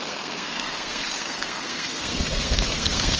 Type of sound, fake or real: fake